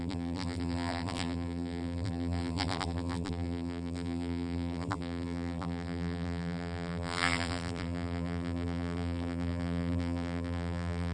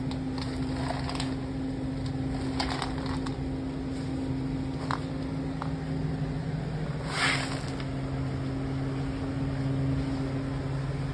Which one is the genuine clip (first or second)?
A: second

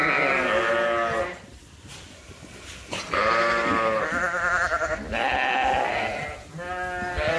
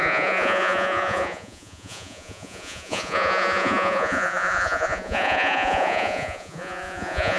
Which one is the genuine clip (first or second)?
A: first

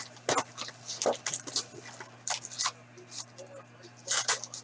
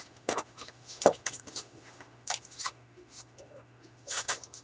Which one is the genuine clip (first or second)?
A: first